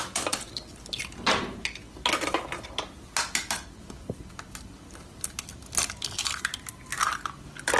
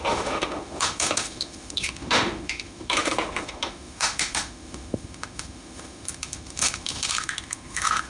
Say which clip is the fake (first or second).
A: second